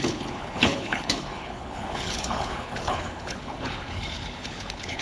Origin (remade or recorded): remade